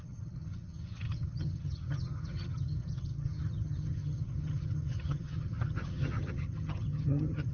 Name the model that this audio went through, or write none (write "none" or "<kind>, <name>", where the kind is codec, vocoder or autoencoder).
vocoder, HiFi-GAN